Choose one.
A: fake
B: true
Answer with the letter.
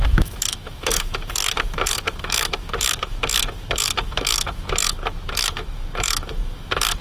A